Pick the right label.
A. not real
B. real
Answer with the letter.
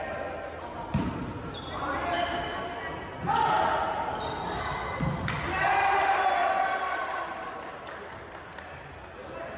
B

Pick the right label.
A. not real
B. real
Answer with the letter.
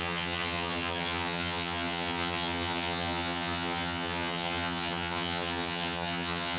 A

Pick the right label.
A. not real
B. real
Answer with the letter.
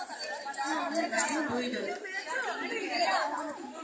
A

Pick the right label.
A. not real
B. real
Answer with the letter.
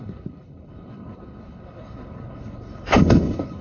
A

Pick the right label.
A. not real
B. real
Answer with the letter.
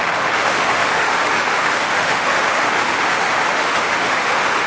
A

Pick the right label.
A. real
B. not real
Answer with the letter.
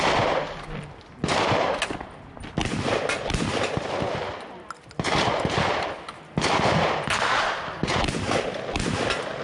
A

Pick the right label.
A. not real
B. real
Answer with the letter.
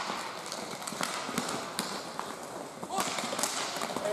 B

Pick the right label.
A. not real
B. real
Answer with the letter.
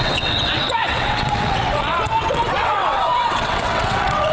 A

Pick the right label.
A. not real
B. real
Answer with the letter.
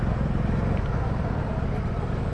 A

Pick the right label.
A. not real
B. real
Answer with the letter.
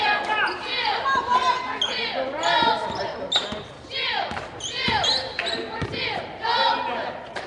B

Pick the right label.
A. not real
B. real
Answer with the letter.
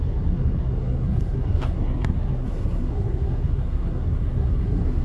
A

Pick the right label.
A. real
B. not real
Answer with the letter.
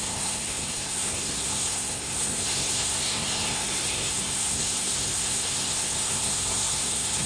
B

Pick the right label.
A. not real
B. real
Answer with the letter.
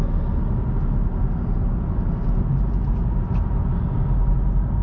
B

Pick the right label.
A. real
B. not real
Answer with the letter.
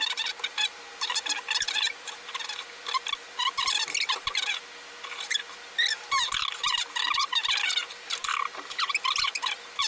A